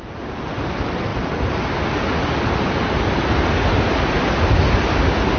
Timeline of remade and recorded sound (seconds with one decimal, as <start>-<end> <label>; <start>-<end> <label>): 0.0-5.4 recorded

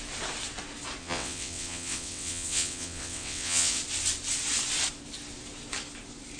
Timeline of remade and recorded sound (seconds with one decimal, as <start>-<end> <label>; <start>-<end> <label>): 0.0-1.0 recorded; 1.0-3.8 remade; 3.8-6.4 recorded

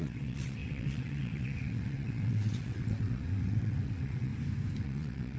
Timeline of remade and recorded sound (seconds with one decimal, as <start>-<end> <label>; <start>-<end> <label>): 0.0-4.3 remade; 4.3-4.8 recorded; 4.8-5.4 remade

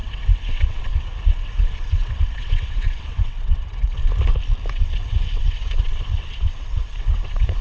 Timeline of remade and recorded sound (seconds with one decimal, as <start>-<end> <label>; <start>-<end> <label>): 0.0-4.0 remade; 4.0-4.7 recorded; 4.7-7.6 remade

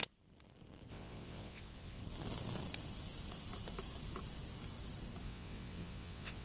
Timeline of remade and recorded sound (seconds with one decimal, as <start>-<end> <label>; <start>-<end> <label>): 0.0-0.9 recorded; 0.9-2.0 remade; 2.0-5.2 recorded; 5.2-6.4 remade

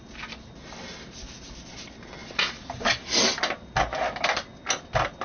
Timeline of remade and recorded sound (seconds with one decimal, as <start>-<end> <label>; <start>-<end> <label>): 0.0-5.2 recorded

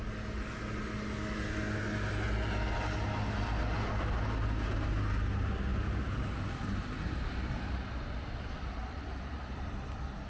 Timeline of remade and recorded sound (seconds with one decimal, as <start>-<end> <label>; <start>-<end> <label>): 0.0-10.3 recorded